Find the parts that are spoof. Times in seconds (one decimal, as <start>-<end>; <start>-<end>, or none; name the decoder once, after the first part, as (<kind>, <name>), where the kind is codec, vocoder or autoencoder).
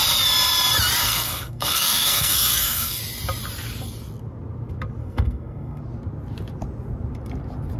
1.0-3.0 (codec, SNAC); 5.0-5.8